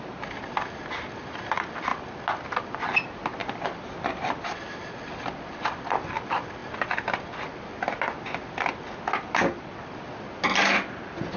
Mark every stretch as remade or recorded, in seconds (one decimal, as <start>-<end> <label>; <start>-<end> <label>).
0.0-11.4 recorded